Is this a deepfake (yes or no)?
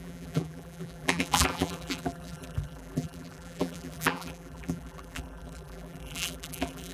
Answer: yes